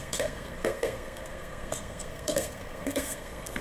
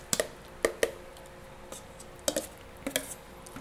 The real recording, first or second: second